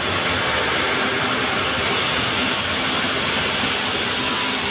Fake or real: real